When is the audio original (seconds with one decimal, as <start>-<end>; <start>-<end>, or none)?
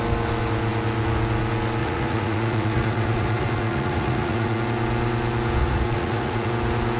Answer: 0.0-1.8; 4.6-5.6; 6.5-7.0